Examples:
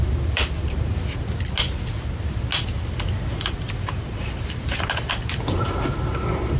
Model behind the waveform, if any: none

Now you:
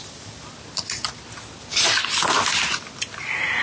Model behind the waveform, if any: none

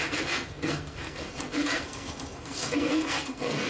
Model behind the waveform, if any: codec, SNAC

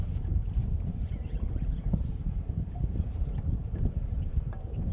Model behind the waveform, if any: vocoder, BigVGAN v2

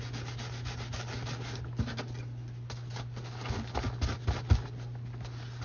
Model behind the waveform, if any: none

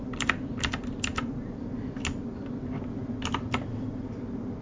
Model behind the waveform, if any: none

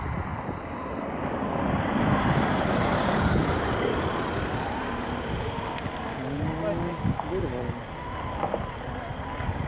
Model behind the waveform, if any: none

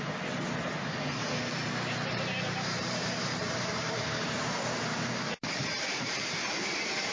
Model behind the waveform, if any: vocoder, BigVGAN v2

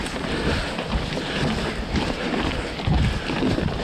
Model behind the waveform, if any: none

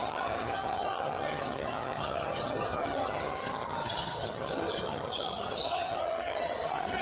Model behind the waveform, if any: vocoder, HiFi-GAN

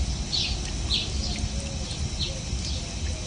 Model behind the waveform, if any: none